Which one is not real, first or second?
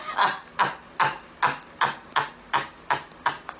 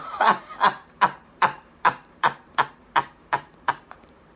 second